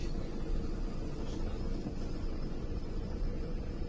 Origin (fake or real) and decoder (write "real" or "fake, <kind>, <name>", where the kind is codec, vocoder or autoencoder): fake, vocoder, Vocos